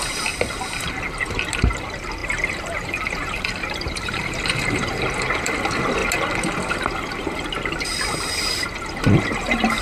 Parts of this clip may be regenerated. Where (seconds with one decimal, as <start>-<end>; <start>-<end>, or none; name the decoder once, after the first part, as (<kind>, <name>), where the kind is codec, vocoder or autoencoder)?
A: 2.2-5.0 (vocoder, BigVGAN v2)